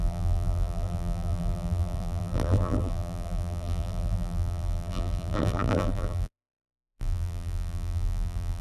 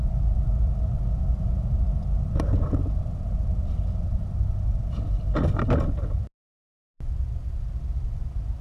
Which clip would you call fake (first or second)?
first